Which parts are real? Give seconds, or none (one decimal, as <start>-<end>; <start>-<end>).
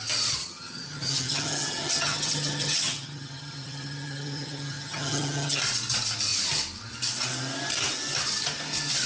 0.0-0.4; 5.6-9.1